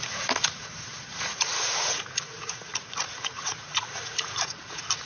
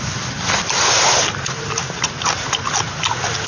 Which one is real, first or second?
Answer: second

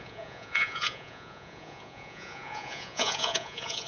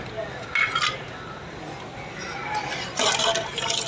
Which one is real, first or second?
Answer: second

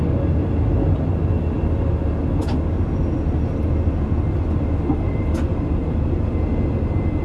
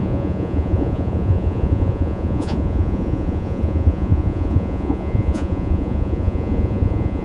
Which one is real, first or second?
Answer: first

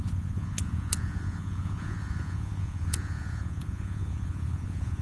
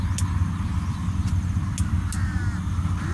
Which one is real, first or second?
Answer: second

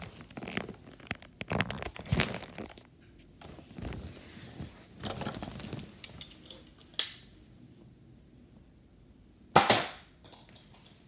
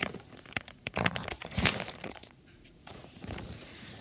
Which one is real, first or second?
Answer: first